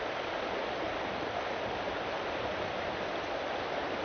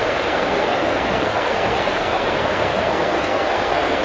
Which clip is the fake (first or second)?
second